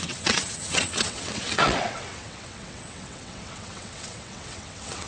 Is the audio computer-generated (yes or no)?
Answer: yes